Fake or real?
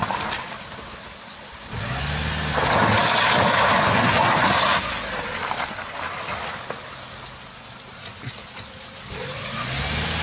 real